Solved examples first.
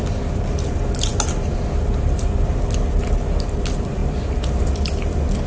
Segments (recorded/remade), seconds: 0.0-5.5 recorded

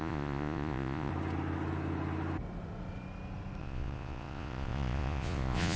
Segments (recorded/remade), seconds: 0.0-1.1 remade; 1.1-3.6 recorded; 3.6-5.8 remade

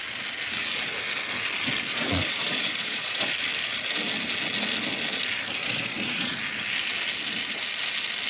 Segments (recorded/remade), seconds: 0.0-1.9 recorded; 1.9-3.3 remade; 3.3-5.6 recorded; 5.6-6.4 remade; 6.4-8.3 recorded

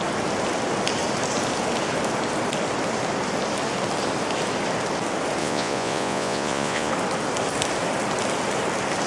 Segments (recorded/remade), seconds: 0.0-5.4 recorded; 5.4-6.9 remade; 6.9-9.1 recorded

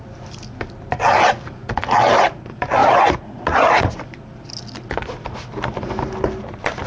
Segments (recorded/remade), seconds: 0.0-2.8 recorded; 2.8-4.0 remade; 4.0-6.9 recorded

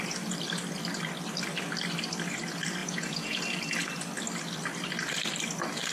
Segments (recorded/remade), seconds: 0.0-2.8 recorded; 2.8-3.4 remade; 3.4-5.9 recorded